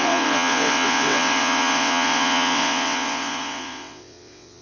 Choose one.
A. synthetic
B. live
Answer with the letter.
A